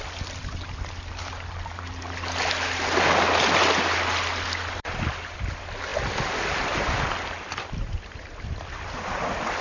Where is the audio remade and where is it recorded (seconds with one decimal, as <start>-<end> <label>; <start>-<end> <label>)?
0.0-9.6 recorded